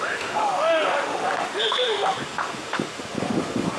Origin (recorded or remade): remade